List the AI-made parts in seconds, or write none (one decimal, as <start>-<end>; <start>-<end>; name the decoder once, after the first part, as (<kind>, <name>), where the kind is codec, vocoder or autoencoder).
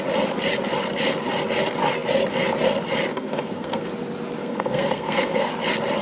3.1-3.9 (codec, SNAC); 4.4-5.5